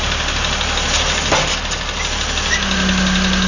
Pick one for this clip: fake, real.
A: real